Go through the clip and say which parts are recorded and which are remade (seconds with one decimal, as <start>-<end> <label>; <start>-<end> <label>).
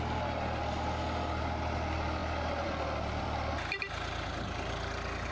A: 0.0-2.2 recorded; 2.2-3.5 remade; 3.5-5.3 recorded